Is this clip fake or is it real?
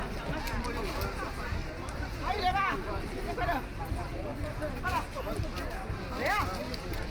real